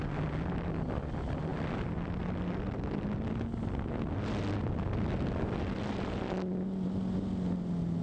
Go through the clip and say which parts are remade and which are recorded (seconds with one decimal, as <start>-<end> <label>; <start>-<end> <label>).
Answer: 0.0-8.0 recorded